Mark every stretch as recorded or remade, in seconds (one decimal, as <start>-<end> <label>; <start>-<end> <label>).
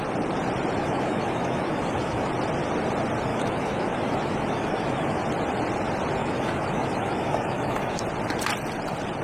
0.0-0.8 recorded; 0.8-2.3 remade; 2.3-3.3 recorded; 3.3-5.2 remade; 5.2-6.2 recorded; 6.2-8.0 remade; 8.0-9.2 recorded